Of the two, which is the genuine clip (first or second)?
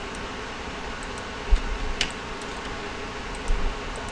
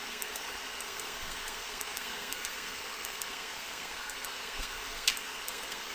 first